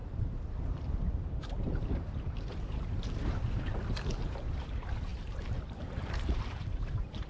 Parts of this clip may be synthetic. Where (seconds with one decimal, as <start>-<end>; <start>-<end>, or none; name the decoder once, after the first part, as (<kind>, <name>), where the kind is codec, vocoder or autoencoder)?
1.5-3.7 (vocoder, BigVGAN v2); 4.3-7.3